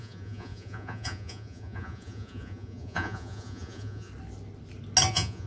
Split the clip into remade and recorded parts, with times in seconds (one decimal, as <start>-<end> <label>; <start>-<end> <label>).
0.0-4.1 remade; 4.1-5.1 recorded; 5.1-5.5 remade